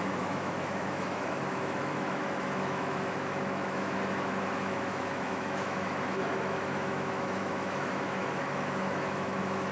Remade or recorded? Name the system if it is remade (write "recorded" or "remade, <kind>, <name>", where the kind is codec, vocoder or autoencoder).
remade, autoencoder, DAC-VAE